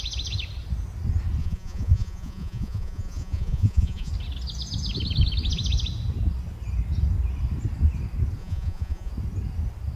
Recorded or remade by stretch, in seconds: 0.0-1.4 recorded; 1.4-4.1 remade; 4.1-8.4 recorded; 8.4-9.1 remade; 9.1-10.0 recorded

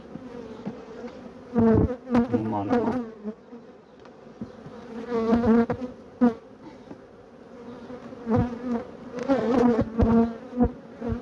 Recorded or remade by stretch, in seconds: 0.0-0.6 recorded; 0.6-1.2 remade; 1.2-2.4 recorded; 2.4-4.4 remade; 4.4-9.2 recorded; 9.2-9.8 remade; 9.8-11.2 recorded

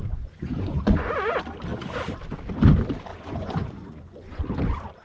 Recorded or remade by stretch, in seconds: 0.0-1.1 remade; 1.1-3.1 recorded; 3.1-4.4 remade; 4.4-5.0 recorded

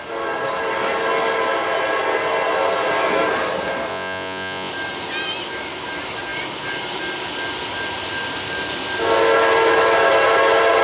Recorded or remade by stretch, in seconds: 0.0-3.9 recorded; 3.9-4.7 remade; 4.7-10.8 recorded

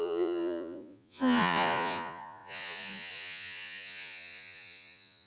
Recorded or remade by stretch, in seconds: 0.0-5.3 remade